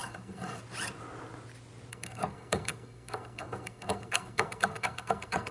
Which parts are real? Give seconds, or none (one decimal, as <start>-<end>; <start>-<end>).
0.6-1.9